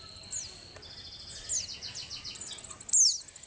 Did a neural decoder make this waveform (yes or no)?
no